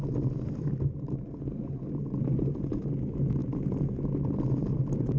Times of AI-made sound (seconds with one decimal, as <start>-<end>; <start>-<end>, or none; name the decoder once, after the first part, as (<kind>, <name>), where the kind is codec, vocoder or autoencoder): none